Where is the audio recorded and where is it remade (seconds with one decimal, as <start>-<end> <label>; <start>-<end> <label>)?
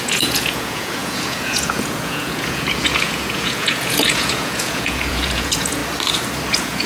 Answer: 0.0-5.8 remade; 5.8-6.5 recorded; 6.5-6.9 remade